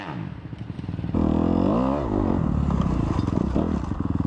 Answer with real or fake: real